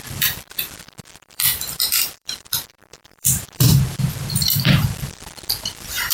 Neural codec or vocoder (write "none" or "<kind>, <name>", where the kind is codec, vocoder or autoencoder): vocoder, BigVGAN v2